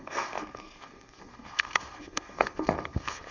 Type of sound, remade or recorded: remade